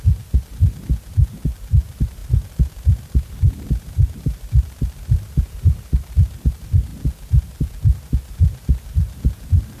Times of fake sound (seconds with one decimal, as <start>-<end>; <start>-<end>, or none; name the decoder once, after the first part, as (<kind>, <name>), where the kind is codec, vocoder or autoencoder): 2.2-6.1 (vocoder, BigVGAN v2)